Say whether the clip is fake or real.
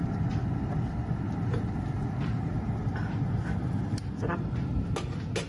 real